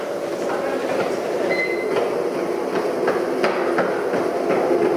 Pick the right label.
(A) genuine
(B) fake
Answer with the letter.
A